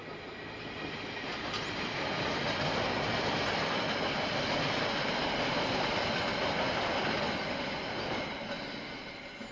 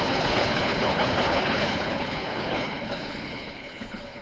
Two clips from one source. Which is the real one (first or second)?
first